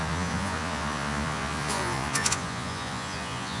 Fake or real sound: fake